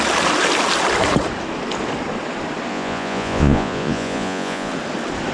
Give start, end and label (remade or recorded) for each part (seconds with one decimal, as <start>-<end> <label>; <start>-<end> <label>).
0.0-2.7 recorded; 2.7-4.7 remade; 4.7-5.3 recorded